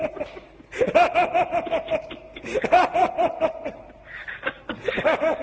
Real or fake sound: real